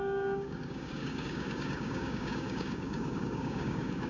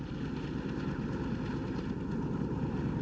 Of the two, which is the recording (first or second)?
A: second